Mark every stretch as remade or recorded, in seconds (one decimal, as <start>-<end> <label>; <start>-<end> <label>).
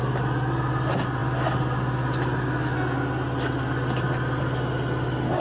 0.0-5.4 recorded